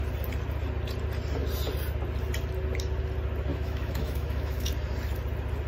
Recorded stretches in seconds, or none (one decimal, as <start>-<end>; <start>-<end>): 0.0-3.5; 4.7-5.7